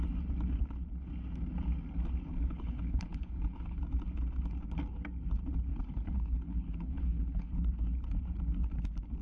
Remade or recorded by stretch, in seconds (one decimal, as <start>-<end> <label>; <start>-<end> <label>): 0.0-2.3 recorded; 2.3-3.8 remade; 3.8-5.7 recorded; 5.7-7.5 remade; 7.5-9.2 recorded